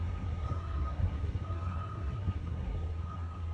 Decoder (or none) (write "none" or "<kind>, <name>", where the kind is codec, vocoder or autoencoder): codec, SNAC